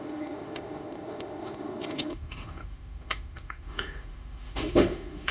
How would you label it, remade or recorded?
remade